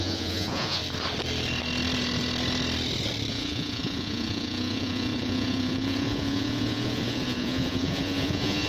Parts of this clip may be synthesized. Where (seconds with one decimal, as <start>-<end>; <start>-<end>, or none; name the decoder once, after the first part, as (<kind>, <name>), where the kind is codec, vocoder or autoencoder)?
0.0-0.8 (vocoder, Vocos); 3.3-8.7